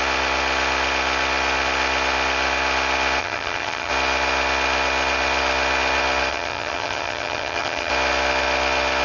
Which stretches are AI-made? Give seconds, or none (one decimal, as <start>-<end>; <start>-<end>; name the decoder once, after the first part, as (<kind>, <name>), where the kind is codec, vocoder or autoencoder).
3.2-3.9 (vocoder, HiFi-GAN); 6.3-7.9